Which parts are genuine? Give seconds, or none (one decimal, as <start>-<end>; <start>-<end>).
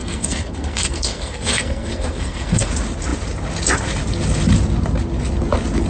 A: 2.7-5.9